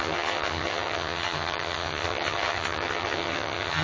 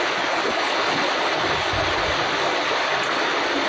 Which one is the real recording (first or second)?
second